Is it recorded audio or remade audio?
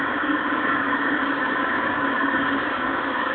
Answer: remade